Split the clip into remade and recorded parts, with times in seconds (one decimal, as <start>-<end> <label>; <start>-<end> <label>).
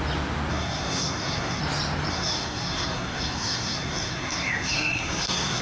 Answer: 0.0-0.5 recorded; 0.5-1.6 remade; 1.6-2.1 recorded; 2.1-5.6 remade